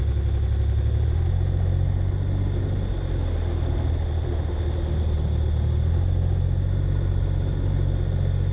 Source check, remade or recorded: recorded